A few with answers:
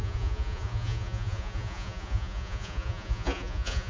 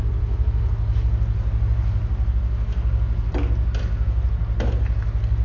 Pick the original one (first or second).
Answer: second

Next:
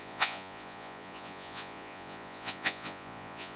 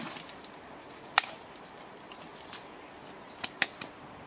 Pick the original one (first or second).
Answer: second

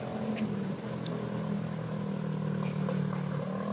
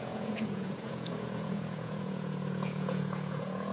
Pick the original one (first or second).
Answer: first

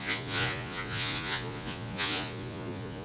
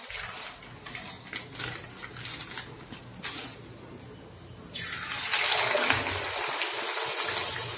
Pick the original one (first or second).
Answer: second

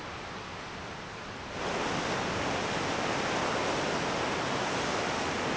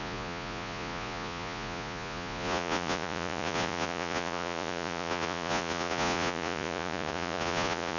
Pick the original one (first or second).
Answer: first